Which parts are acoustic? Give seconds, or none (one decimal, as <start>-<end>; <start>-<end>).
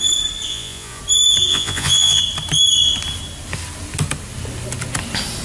0.0-0.5; 1.0-1.5; 2.2-5.4